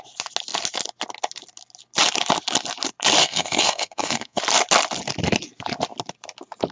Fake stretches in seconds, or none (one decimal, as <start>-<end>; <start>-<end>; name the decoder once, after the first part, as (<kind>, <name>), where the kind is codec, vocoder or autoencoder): 3.2-4.4 (codec, SNAC)